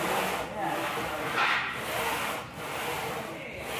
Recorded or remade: recorded